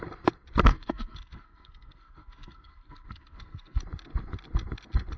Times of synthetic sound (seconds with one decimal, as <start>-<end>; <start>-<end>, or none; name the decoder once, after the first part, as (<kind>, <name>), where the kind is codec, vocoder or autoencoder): 0.7-3.8 (codec, SNAC)